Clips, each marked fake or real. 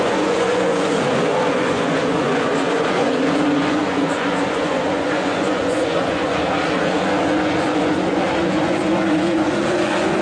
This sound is fake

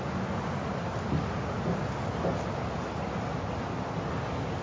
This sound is real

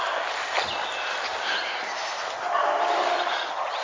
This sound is real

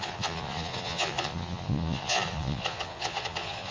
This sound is fake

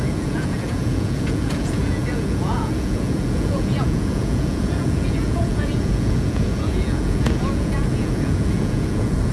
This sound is fake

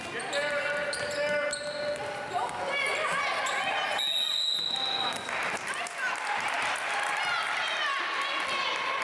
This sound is real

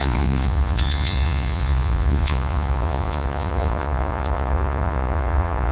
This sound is fake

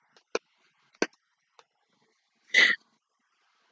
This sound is real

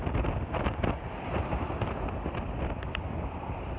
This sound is real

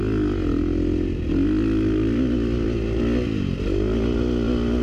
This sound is real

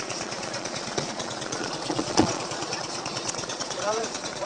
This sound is fake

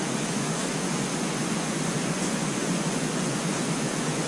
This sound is fake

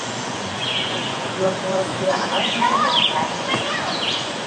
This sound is fake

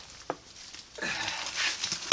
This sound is real